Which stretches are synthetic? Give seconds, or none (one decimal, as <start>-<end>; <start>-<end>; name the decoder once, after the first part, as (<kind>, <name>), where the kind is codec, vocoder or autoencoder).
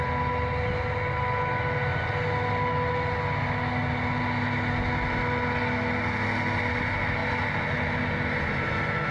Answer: none